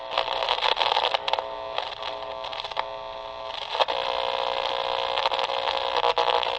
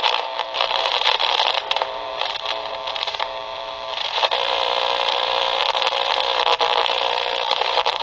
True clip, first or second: first